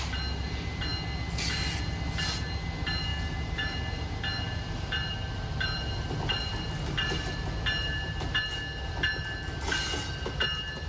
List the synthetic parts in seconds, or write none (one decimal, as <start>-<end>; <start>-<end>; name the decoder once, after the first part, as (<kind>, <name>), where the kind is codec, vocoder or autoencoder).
none

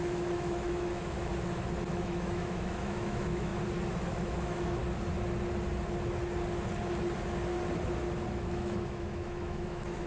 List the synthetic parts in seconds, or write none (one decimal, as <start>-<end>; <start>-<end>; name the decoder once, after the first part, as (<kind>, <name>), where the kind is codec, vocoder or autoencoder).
0.0-1.3 (autoencoder, DAC-VAE); 1.9-3.5; 4.0-4.8; 8.3-10.1

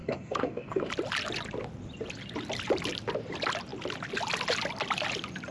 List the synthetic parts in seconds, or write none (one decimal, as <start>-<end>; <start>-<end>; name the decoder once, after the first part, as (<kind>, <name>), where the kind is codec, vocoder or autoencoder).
0.0-0.9 (codec, SNAC)